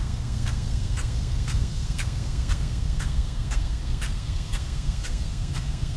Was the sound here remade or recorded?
remade